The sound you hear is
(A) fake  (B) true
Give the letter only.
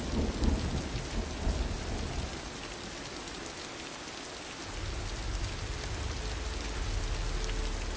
B